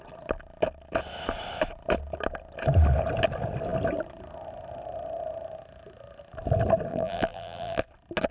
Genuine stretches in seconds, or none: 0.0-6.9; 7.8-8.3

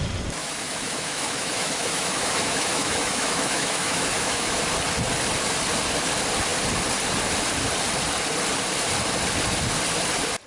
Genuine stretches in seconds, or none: 0.0-0.4; 4.6-10.5

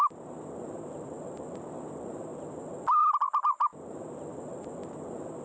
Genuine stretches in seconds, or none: 0.0-5.4

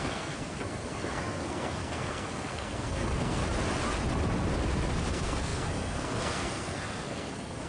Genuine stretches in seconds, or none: 3.4-5.1

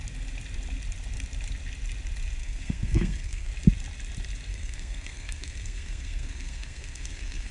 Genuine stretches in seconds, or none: 0.0-2.4; 3.5-4.5

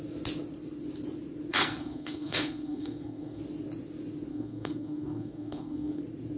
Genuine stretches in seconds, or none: 0.0-1.5; 3.4-4.3; 6.0-6.4

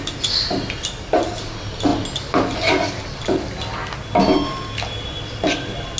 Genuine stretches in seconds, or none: 0.0-6.0